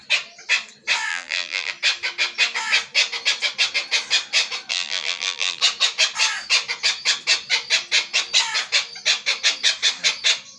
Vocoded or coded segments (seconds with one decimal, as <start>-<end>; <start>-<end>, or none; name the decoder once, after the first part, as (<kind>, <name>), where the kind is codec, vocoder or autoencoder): 1.1-1.7 (vocoder, BigVGAN v2); 4.7-5.6